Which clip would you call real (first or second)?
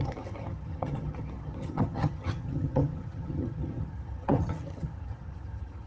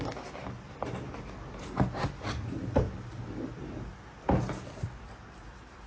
second